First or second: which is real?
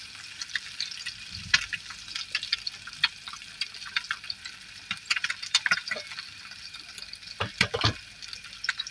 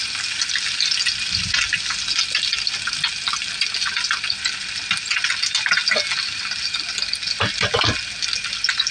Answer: second